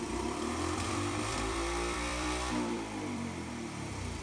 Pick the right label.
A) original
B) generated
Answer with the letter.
B